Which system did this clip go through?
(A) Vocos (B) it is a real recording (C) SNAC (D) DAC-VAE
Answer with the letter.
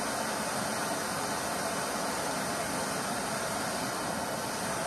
B